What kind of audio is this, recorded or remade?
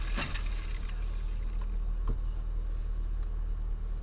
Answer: recorded